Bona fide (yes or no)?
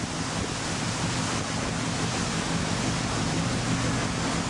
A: yes